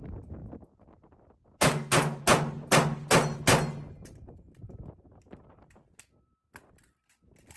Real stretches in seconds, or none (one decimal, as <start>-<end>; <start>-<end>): 0.0-7.6